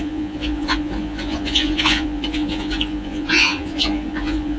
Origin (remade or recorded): remade